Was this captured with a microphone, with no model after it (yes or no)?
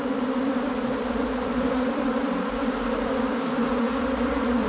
no